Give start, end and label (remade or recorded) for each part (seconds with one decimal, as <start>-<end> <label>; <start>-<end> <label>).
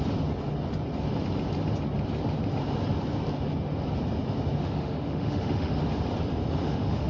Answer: 0.0-4.6 recorded; 4.6-5.8 remade; 5.8-6.6 recorded; 6.6-7.1 remade